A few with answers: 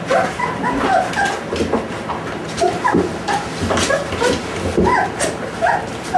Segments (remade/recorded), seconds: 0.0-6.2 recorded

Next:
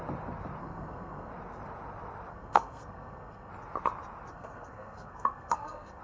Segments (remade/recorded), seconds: 0.0-0.6 recorded; 0.6-1.3 remade; 1.3-2.3 recorded; 2.3-3.5 remade; 3.5-4.3 recorded; 4.3-6.0 remade

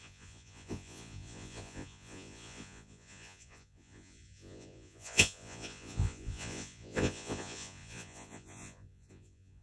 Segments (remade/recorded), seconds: 0.0-9.6 remade

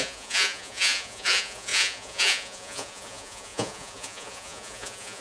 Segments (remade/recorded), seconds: 0.0-5.2 remade

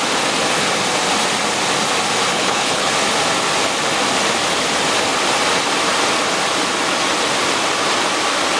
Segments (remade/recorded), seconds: 0.0-2.3 recorded; 2.3-2.9 remade; 2.9-8.6 recorded

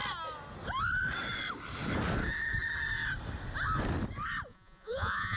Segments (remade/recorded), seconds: 0.0-4.5 recorded; 4.5-5.4 remade

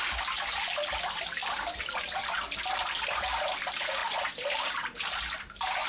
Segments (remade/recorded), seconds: 0.0-5.9 recorded